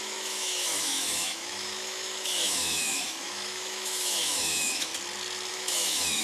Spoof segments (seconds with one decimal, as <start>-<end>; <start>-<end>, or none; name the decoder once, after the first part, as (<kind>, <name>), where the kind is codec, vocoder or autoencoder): 0.0-4.9 (autoencoder, DAC-VAE); 5.5-6.2